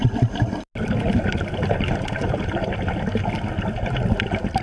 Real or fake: real